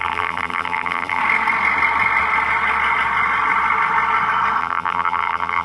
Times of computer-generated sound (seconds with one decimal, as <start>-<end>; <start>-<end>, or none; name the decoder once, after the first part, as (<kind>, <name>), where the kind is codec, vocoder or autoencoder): 0.0-1.2 (vocoder, BigVGAN v2); 4.6-5.6